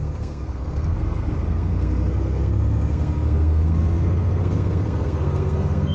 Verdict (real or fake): fake